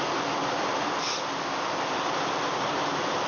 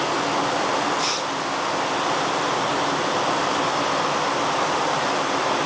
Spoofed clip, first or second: first